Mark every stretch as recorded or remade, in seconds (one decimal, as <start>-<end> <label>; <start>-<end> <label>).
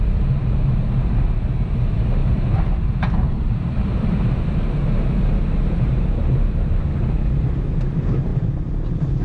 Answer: 0.0-2.2 recorded; 2.2-4.4 remade; 4.4-9.2 recorded